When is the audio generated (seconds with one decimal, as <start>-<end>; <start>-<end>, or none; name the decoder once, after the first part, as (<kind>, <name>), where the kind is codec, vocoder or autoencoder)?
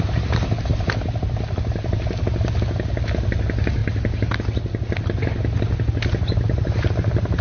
0.7-2.2 (vocoder, BigVGAN v2)